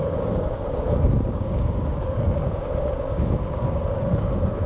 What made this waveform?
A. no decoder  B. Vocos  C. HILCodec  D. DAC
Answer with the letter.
D